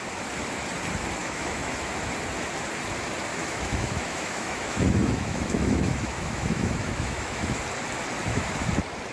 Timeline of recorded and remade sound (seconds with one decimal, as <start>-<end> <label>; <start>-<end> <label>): 0.0-1.2 recorded; 1.2-2.1 remade; 2.1-3.3 recorded; 3.3-7.6 remade; 7.6-8.2 recorded; 8.2-8.7 remade; 8.7-9.1 recorded